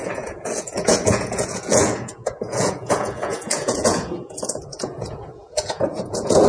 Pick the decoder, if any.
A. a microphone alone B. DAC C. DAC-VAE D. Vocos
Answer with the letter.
D